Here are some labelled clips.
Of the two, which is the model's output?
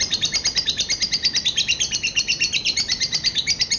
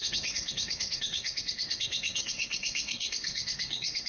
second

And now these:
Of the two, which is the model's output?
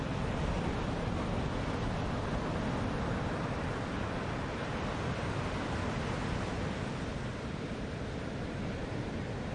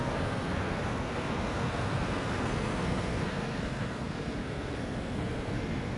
second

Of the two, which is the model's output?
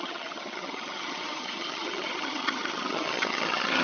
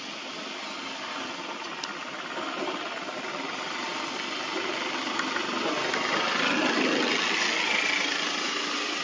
first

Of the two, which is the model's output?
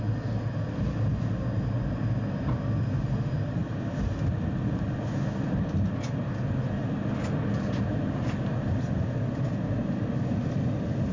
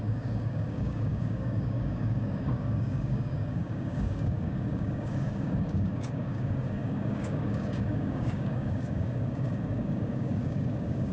second